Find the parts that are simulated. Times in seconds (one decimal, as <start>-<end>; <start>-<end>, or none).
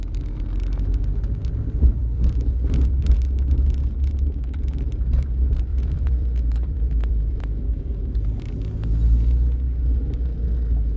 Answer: 2.0-3.0; 5.7-7.8